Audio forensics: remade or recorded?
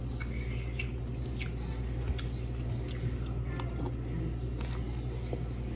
recorded